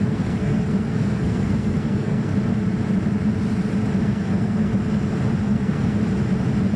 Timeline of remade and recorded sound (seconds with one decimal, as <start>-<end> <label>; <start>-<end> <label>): 0.0-2.3 remade; 2.3-4.0 recorded; 4.0-4.7 remade; 4.7-5.4 recorded; 5.4-6.0 remade; 6.0-6.8 recorded